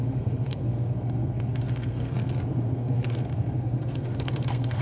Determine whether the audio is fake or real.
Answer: fake